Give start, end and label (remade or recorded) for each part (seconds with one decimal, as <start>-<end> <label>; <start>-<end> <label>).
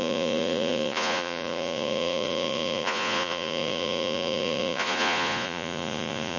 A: 0.0-6.4 remade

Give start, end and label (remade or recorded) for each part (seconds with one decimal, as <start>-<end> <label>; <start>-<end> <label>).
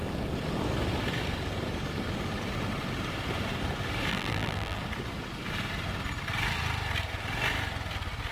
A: 0.0-4.1 recorded; 4.1-4.8 remade; 4.8-8.3 recorded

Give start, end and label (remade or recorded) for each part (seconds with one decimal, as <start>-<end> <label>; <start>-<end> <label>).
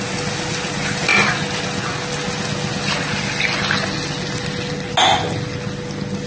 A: 0.0-6.3 recorded